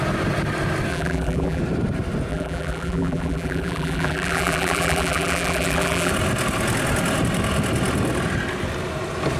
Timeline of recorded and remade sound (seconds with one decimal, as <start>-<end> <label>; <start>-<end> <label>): 0.0-0.9 recorded; 0.9-1.6 remade; 1.6-2.3 recorded; 2.3-6.1 remade; 6.1-9.4 recorded